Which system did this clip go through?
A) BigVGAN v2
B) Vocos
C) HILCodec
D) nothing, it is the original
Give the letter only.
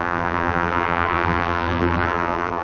A